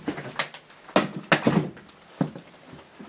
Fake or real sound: real